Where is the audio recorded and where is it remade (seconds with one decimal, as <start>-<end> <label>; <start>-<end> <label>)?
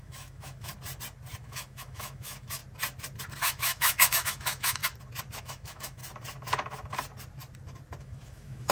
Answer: 0.0-0.7 remade; 0.7-1.4 recorded; 1.4-2.6 remade; 2.6-3.4 recorded; 3.4-4.8 remade; 4.8-5.4 recorded; 5.4-6.0 remade; 6.0-8.0 recorded; 8.0-8.7 remade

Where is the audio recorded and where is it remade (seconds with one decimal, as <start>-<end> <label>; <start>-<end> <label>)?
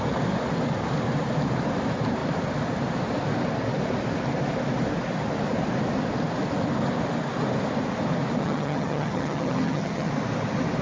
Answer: 0.0-8.4 recorded; 8.4-10.1 remade; 10.1-10.8 recorded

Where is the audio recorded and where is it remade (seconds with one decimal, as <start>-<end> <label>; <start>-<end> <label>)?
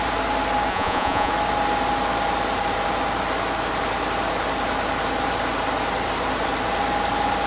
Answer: 0.0-0.7 recorded; 0.7-1.3 remade; 1.3-7.5 recorded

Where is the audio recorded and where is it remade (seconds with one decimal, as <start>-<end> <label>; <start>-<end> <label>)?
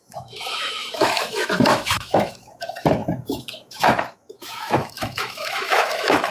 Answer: 0.0-6.3 remade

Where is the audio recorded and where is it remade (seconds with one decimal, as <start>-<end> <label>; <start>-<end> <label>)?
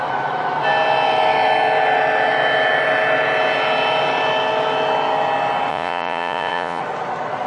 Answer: 0.0-5.7 recorded; 5.7-6.8 remade; 6.8-7.5 recorded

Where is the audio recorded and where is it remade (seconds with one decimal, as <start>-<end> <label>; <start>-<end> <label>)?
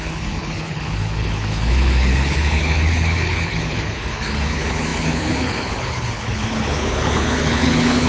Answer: 0.0-8.1 remade